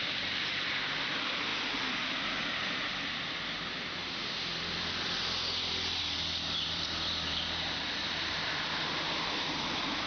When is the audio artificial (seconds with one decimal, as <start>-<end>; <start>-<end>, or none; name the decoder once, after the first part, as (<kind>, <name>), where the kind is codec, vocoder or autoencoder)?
0.0-10.1 (vocoder, BigVGAN v2)